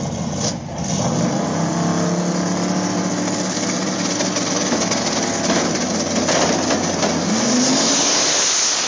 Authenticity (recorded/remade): recorded